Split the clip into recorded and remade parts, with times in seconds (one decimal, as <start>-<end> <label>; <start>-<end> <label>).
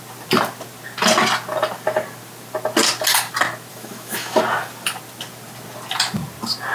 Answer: 0.0-3.7 recorded; 3.7-4.4 remade; 4.4-6.7 recorded